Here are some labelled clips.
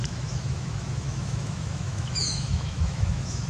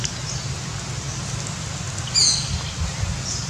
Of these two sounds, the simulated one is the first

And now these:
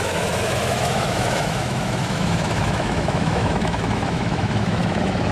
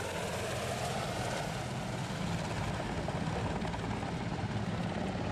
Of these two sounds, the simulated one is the first